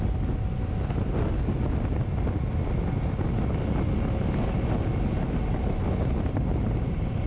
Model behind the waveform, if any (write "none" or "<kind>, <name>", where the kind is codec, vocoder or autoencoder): none